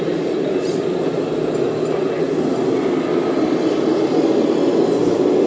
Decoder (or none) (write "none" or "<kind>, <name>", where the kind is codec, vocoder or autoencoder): none